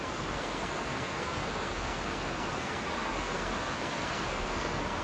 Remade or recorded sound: remade